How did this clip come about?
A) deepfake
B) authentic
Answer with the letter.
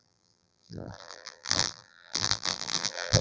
A